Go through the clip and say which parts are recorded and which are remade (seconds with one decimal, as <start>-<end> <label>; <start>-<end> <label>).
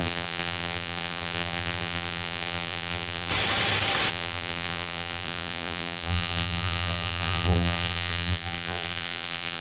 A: 0.0-3.3 remade; 3.3-4.1 recorded; 4.1-9.6 remade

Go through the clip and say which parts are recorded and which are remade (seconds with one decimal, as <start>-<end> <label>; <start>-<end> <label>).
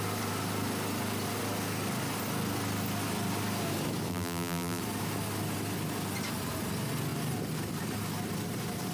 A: 0.0-4.1 recorded; 4.1-4.8 remade; 4.8-8.9 recorded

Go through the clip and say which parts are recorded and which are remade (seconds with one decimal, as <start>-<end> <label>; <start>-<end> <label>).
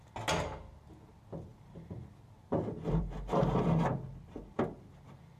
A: 0.0-5.4 recorded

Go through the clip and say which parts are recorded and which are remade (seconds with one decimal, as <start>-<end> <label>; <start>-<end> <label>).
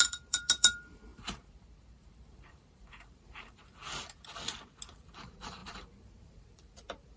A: 0.0-3.6 remade; 3.6-5.1 recorded; 5.1-7.2 remade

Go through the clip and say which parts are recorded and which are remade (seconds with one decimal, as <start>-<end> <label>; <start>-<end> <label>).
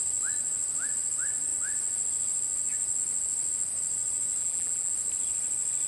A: 0.0-4.4 recorded; 4.4-4.9 remade; 4.9-5.9 recorded